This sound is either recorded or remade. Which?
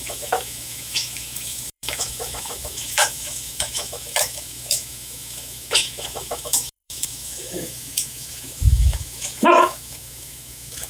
remade